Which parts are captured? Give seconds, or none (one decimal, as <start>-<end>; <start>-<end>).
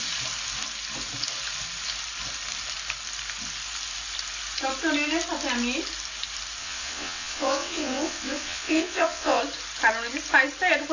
0.0-6.6; 9.4-10.9